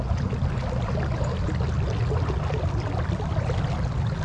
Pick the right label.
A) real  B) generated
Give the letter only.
A